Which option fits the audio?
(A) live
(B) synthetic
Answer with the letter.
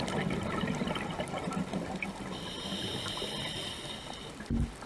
A